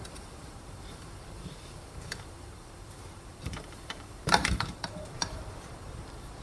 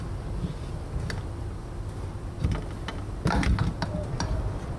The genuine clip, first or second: second